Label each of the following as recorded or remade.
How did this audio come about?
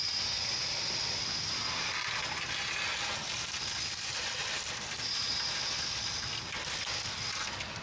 recorded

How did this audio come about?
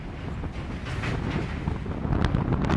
recorded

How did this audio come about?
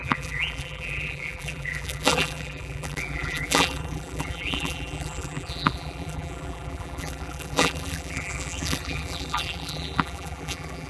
remade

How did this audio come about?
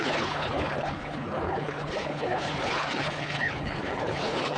remade